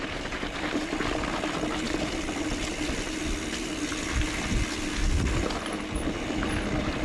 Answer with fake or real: real